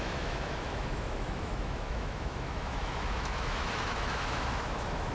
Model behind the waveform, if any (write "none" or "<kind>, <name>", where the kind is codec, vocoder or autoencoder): autoencoder, DAC-VAE